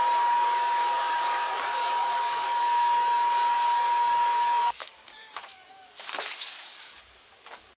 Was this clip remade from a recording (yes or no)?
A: yes